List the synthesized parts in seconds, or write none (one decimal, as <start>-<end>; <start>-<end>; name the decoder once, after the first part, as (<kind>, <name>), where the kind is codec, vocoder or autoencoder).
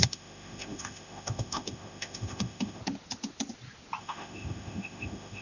0.0-2.8 (autoencoder, DAC-VAE); 4.0-5.4